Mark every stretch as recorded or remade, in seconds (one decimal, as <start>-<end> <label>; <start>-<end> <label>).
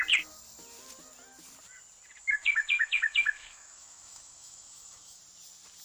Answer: 0.0-2.2 recorded; 2.2-5.2 remade; 5.2-5.8 recorded